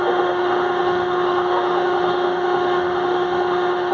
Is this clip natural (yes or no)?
no